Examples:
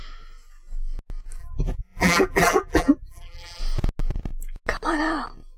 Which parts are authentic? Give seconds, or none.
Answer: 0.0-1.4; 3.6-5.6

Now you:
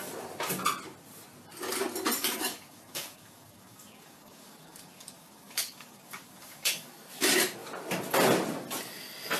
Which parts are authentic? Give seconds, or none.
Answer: 0.0-2.2; 6.9-9.4

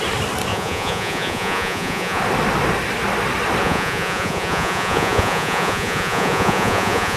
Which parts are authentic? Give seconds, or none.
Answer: 0.0-0.5; 2.2-3.6

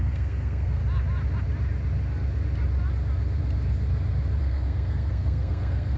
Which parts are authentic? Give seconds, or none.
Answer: 0.8-4.4

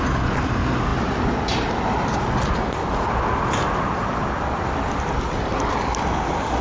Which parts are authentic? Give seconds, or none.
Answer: 0.0-0.9; 2.5-4.0; 5.5-6.6